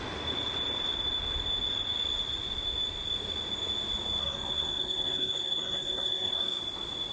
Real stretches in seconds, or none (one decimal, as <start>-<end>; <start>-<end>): 0.0-4.2; 6.6-7.1